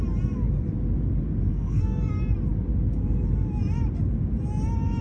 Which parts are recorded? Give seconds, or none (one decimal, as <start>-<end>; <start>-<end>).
0.0-1.5; 2.1-5.0